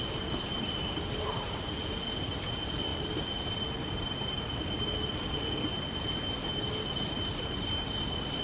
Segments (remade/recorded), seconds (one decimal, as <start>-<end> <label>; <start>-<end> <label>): 0.0-8.4 recorded